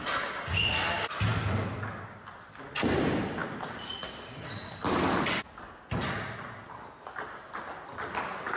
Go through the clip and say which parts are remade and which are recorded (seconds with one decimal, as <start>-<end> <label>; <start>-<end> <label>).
0.0-8.6 recorded